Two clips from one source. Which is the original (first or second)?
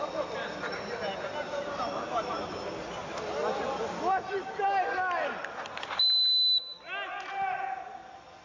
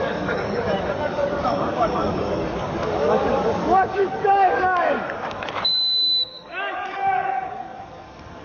first